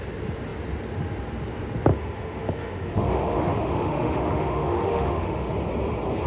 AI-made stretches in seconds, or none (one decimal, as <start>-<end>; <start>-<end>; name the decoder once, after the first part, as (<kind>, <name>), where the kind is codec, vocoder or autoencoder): 1.9-5.5 (autoencoder, DAC-VAE)